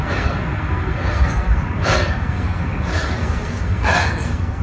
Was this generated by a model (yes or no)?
yes